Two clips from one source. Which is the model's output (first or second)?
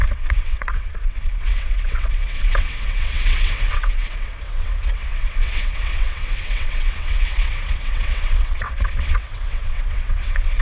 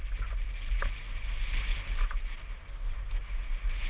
first